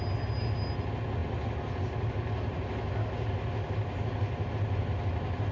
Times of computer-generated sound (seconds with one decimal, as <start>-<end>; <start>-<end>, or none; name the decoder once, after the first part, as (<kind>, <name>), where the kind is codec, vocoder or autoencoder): none